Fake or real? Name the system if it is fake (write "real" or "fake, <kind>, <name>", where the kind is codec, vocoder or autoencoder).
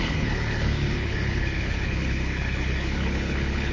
fake, codec, HILCodec